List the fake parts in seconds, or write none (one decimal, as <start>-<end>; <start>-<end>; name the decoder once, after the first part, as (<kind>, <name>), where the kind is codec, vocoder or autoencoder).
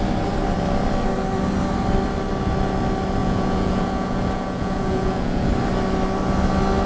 3.2-5.5 (vocoder, Vocos)